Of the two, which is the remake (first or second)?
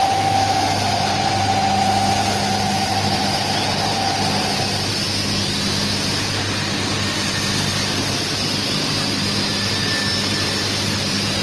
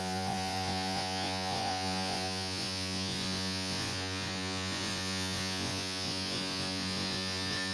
second